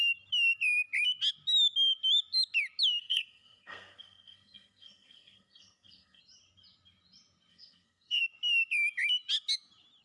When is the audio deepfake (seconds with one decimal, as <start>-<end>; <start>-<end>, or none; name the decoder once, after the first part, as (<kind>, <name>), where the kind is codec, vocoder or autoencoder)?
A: 3.0-6.2 (codec, SNAC); 7.5-8.2